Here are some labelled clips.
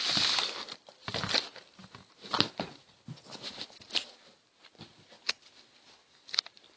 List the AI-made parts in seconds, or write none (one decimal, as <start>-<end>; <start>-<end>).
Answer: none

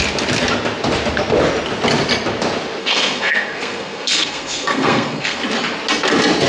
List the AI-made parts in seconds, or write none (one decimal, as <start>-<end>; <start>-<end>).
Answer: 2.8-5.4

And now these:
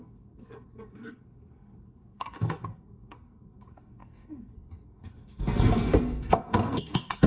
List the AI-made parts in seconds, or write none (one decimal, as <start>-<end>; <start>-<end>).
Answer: 0.0-7.3